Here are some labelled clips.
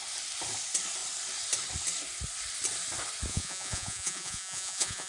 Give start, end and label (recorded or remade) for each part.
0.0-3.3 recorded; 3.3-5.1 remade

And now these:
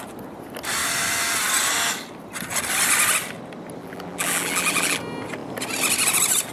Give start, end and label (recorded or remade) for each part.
0.0-3.8 recorded; 3.8-5.0 remade; 5.0-6.5 recorded

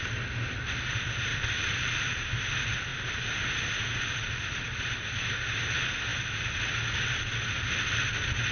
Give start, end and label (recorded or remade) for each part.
0.0-1.3 recorded; 1.3-2.4 remade; 2.4-2.9 recorded; 2.9-3.5 remade; 3.5-8.5 recorded